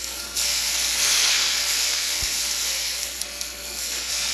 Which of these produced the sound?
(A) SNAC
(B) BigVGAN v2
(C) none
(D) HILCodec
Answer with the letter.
A